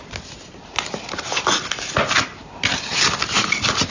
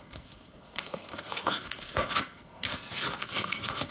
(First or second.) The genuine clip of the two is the first